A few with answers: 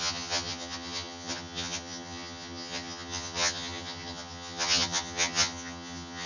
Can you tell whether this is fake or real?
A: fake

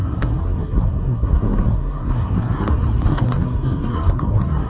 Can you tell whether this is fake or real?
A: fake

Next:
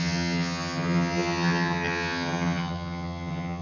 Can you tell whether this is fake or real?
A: fake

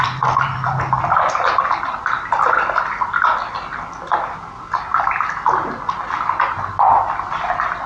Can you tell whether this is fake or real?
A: real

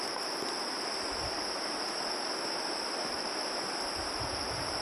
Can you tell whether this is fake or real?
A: real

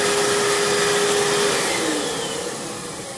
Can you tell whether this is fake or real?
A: real